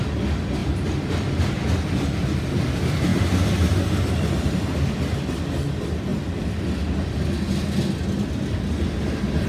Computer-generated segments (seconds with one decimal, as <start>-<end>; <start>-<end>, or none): 0.6-1.1; 3.1-5.4